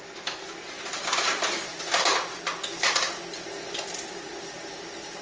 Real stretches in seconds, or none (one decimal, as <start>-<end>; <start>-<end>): 0.0-5.2

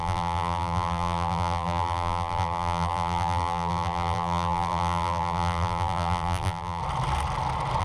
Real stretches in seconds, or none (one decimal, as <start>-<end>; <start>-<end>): 6.8-7.8

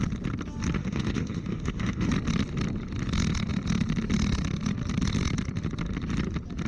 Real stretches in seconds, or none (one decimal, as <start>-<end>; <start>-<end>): 0.0-0.8; 2.1-6.7